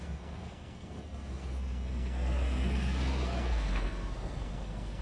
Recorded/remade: remade